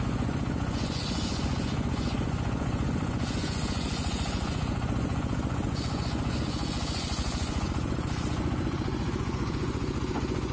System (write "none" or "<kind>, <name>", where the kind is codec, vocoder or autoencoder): vocoder, Vocos